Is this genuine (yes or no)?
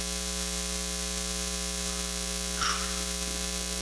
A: yes